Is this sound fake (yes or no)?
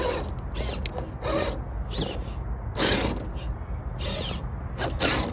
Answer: no